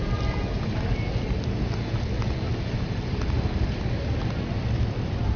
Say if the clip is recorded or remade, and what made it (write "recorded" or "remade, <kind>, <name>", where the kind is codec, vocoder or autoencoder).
recorded